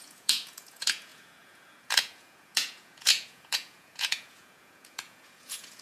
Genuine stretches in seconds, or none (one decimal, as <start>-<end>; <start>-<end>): none